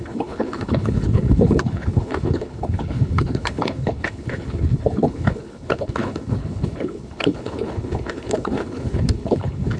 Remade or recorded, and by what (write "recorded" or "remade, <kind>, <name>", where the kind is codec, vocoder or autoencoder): remade, codec, HILCodec